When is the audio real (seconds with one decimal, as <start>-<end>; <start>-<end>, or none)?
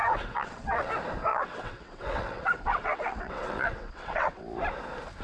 0.9-1.3; 4.4-5.2